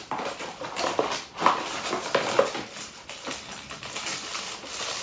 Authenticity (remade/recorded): recorded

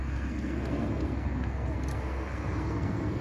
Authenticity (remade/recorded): remade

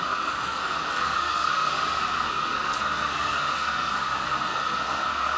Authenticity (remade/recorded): remade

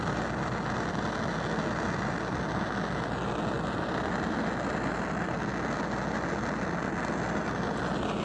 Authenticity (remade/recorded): recorded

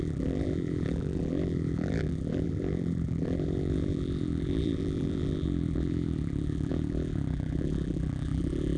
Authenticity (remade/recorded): remade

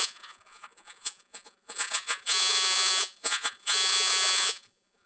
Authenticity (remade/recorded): remade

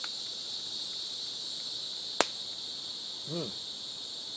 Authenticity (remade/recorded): recorded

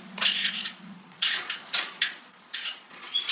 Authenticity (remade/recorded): remade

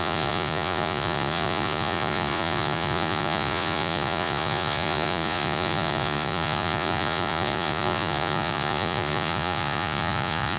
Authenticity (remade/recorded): remade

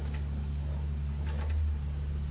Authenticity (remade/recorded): recorded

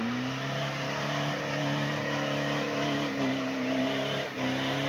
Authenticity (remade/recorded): recorded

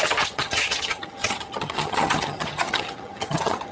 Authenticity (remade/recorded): remade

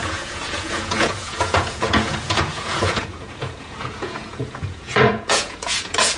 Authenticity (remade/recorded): remade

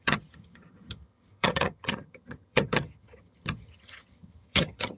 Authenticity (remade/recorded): remade